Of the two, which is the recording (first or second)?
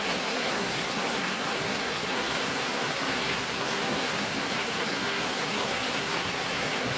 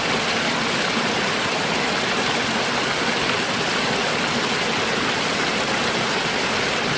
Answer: second